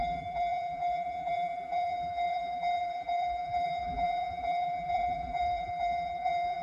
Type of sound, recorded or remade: remade